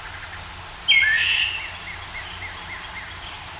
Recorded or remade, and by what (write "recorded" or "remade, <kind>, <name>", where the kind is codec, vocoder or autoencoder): recorded